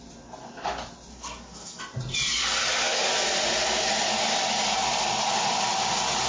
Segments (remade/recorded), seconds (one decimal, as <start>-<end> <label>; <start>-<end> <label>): 0.0-1.1 recorded; 1.1-1.8 remade; 1.8-6.3 recorded